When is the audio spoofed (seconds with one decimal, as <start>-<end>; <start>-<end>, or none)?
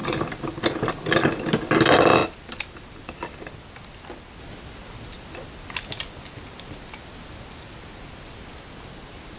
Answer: none